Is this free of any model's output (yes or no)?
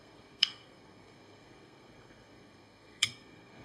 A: no